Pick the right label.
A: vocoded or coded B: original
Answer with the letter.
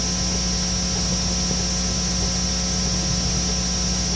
B